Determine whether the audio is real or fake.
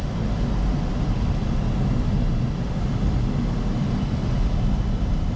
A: real